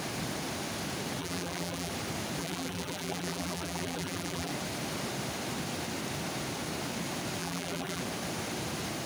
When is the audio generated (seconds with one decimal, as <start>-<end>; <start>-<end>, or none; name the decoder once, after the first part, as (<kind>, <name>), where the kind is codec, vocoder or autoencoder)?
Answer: 1.2-1.9 (vocoder, BigVGAN v2); 2.4-4.5; 7.4-8.0